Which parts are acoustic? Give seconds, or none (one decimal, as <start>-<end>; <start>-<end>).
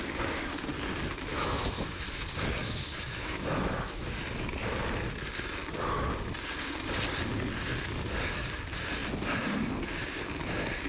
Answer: 0.0-1.3; 2.2-2.6; 4.2-10.9